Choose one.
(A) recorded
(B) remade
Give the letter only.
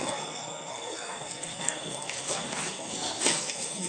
B